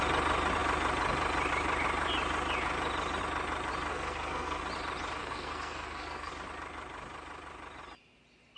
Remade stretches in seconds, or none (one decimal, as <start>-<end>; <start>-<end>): 3.9-4.6; 5.2-6.3